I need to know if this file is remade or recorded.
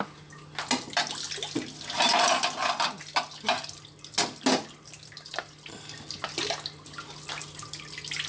recorded